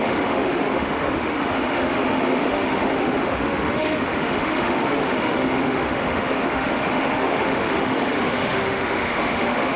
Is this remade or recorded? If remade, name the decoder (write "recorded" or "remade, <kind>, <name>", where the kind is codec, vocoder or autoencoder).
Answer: remade, autoencoder, DAC-VAE